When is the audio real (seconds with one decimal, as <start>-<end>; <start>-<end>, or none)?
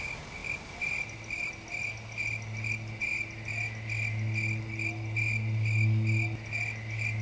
0.0-7.2